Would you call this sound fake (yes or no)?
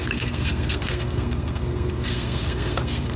yes